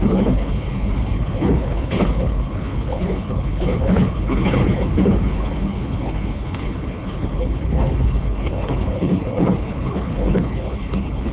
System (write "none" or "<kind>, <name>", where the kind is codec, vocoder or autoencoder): codec, HILCodec